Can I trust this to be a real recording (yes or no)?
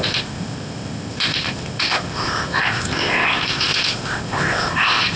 no